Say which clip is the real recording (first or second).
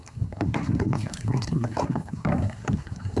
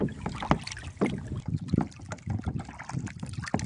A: second